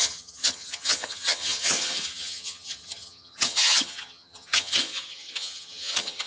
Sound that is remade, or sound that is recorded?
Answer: remade